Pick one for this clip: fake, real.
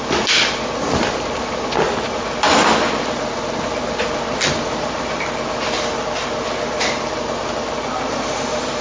real